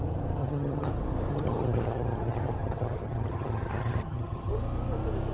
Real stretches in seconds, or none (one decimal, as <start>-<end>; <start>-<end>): 0.0-0.4; 0.9-1.3; 4.5-5.3